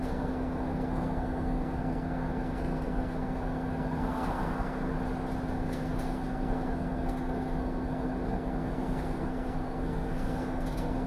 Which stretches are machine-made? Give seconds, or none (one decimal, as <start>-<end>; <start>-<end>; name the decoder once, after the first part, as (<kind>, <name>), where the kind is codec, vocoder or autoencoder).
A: 0.0-4.9 (codec, SNAC); 5.5-11.1